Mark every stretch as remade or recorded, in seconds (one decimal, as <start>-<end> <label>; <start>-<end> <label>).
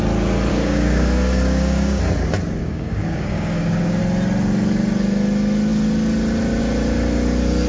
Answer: 0.0-0.5 recorded; 0.5-2.0 remade; 2.0-2.6 recorded; 2.6-4.0 remade; 4.0-7.7 recorded